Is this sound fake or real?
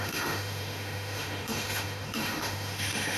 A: fake